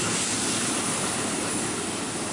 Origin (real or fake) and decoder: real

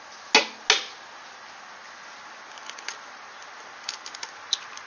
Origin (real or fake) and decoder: real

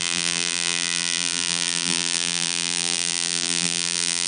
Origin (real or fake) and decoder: fake, vocoder, BigVGAN v2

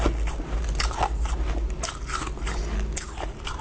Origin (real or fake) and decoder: real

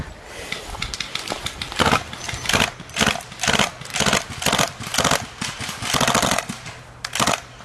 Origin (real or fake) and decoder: real